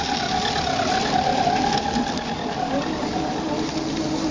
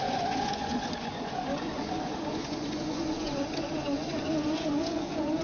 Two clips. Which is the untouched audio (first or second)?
first